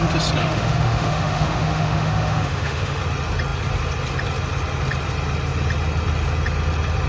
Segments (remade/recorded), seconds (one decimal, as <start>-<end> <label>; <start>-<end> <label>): 0.0-0.4 recorded; 0.4-3.0 remade; 3.0-7.1 recorded